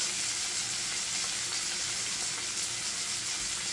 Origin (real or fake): real